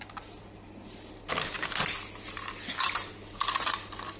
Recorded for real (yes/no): yes